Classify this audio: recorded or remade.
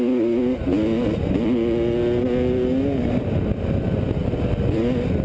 recorded